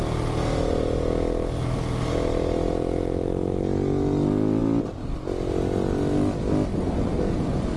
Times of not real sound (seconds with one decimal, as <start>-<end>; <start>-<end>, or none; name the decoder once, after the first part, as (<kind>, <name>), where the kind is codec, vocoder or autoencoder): none

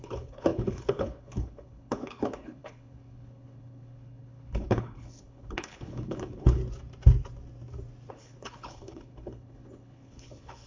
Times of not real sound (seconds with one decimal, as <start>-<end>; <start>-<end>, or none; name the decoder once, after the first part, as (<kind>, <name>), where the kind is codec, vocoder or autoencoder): 0.0-6.6 (codec, HILCodec); 8.1-10.7

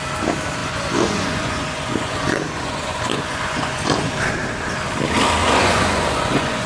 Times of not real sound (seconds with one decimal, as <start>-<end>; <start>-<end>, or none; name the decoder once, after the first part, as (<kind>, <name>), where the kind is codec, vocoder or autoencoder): 0.6-4.1 (vocoder, Vocos); 5.4-6.7

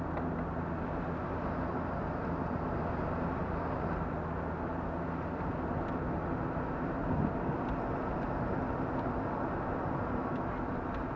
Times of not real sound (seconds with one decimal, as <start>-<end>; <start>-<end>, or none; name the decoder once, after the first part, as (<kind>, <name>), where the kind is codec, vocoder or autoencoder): none

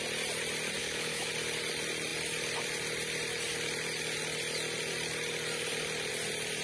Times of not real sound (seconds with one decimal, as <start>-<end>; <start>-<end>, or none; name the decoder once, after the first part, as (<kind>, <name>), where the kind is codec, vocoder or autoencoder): 0.8-1.3 (autoencoder, DAC-VAE)

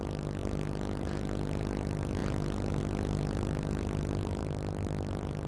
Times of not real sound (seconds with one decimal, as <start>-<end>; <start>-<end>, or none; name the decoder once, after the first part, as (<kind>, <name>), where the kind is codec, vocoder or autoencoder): none

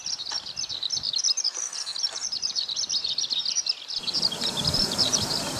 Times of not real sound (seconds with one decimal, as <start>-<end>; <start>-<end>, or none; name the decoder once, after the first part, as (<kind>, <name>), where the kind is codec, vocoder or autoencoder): none

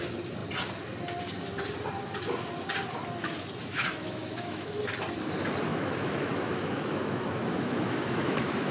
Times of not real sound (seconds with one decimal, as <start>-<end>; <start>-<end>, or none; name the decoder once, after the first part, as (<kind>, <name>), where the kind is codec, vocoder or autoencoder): 3.7-4.8 (autoencoder, DAC-VAE); 5.7-8.7